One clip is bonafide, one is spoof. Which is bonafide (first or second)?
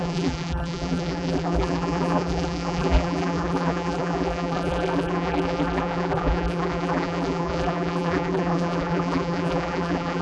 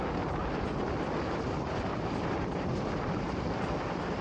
second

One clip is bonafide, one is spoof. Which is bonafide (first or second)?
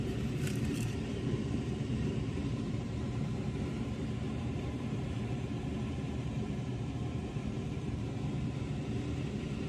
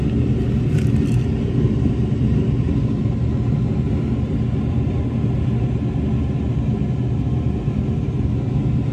second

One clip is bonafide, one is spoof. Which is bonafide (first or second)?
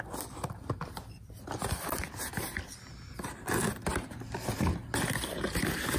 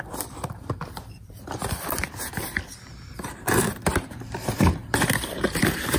first